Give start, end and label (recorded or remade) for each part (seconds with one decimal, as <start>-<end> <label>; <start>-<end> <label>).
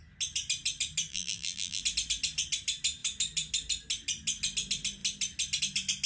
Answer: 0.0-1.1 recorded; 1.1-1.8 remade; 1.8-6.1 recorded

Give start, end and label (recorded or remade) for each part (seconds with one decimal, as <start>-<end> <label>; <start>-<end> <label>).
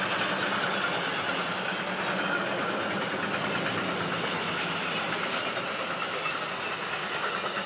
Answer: 0.0-7.7 recorded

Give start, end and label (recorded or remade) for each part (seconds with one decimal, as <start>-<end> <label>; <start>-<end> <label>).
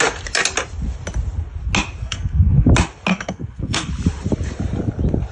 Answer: 0.0-2.0 recorded; 2.0-2.7 remade; 2.7-3.1 recorded; 3.1-3.9 remade; 3.9-5.3 recorded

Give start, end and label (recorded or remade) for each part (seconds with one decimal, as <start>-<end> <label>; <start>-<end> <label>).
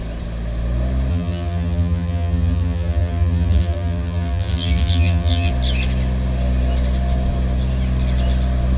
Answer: 0.0-1.1 recorded; 1.1-5.5 remade; 5.5-8.8 recorded